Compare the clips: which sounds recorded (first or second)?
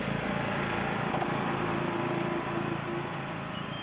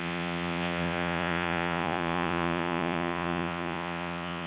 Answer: first